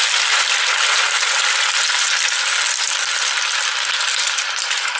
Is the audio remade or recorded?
recorded